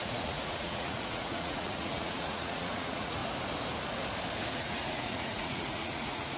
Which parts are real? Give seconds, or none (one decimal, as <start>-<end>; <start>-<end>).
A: 3.2-4.5